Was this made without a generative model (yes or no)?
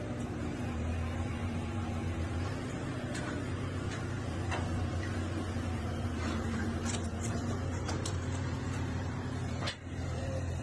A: no